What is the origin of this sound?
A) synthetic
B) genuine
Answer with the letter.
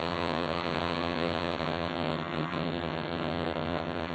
A